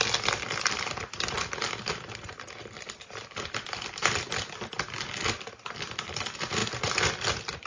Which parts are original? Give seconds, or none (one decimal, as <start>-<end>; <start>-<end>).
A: 0.0-7.7